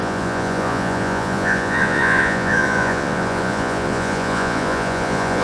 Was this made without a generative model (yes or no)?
no